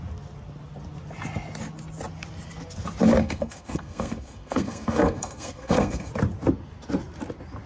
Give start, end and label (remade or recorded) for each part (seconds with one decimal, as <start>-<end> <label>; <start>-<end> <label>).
0.0-3.2 recorded; 3.2-6.1 remade; 6.1-7.7 recorded